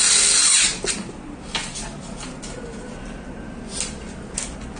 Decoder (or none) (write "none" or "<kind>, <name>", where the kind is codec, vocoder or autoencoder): none